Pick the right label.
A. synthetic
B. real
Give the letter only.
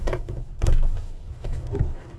A